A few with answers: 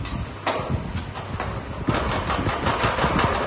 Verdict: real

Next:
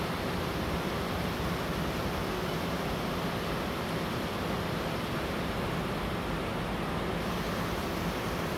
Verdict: real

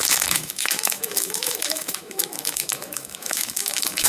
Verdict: fake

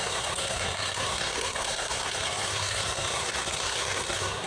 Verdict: fake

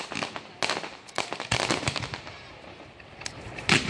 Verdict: real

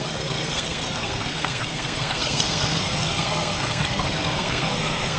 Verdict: fake